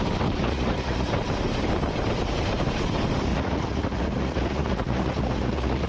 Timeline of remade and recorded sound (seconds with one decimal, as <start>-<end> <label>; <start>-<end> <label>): 0.0-0.4 recorded; 0.4-1.1 remade; 1.1-3.3 recorded; 3.3-5.9 remade